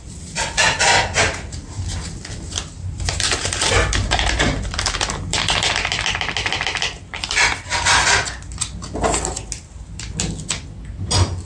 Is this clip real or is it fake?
real